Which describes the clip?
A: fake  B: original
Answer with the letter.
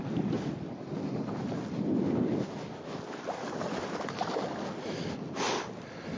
B